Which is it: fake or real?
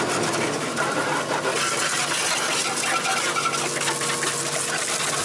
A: real